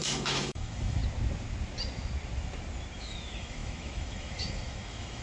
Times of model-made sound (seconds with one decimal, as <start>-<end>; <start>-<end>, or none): 0.0-1.0; 3.0-5.2